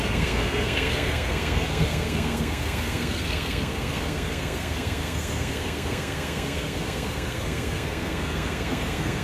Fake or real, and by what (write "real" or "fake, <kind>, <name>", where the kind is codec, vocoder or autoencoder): fake, codec, SNAC